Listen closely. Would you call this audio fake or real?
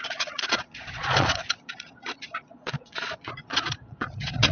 fake